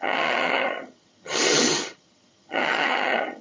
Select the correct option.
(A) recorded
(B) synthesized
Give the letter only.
B